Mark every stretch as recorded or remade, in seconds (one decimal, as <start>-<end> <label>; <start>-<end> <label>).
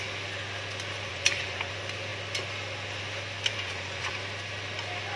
0.0-1.1 recorded; 1.1-1.7 remade; 1.7-3.5 recorded; 3.5-4.1 remade; 4.1-5.2 recorded